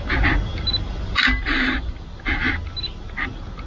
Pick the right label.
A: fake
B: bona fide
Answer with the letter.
B